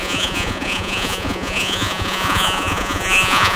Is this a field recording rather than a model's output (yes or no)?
no